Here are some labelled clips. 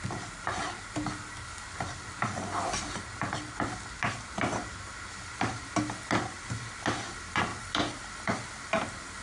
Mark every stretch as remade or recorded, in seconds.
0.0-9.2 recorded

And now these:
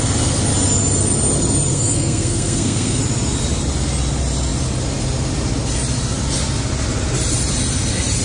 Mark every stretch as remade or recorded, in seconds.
0.0-1.7 recorded; 1.7-3.0 remade; 3.0-8.2 recorded

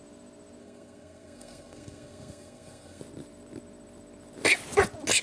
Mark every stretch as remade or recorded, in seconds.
0.0-0.6 recorded; 0.6-3.0 remade; 3.0-5.2 recorded

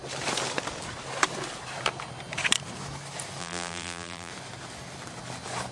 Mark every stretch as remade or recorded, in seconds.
0.0-3.4 recorded; 3.4-4.3 remade; 4.3-5.7 recorded

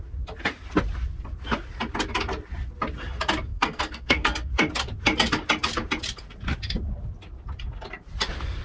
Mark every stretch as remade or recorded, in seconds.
0.0-3.5 recorded; 3.5-4.5 remade; 4.5-8.6 recorded

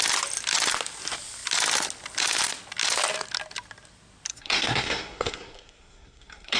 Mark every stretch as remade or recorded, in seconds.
0.0-4.3 recorded; 4.3-6.6 remade